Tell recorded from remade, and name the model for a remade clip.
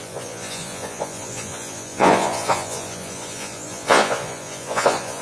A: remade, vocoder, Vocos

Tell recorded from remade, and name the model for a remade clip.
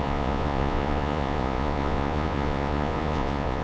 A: remade, vocoder, Vocos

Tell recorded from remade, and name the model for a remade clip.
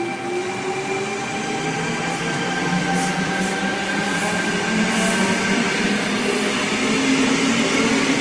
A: recorded